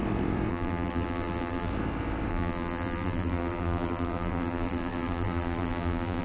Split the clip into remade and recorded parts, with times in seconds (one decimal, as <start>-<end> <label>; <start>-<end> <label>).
0.0-0.5 recorded; 0.5-1.7 remade; 1.7-2.3 recorded; 2.3-6.2 remade